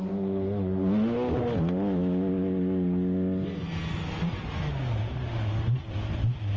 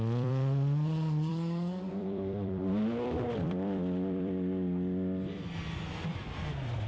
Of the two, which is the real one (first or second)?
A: first